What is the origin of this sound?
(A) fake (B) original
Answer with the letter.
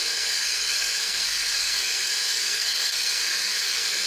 A